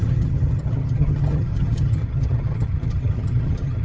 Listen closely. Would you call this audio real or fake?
fake